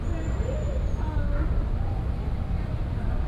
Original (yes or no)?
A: yes